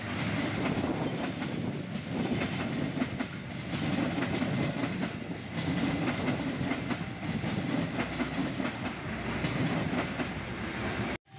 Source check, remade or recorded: recorded